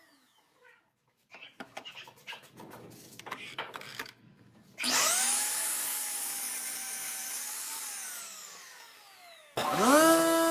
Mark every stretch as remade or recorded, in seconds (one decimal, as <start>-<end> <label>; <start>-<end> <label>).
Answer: 0.0-10.5 remade